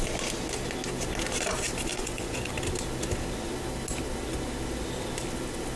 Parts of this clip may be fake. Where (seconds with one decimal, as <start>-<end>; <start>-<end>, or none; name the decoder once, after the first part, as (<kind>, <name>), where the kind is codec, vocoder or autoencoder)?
1.9-2.5 (vocoder, Vocos)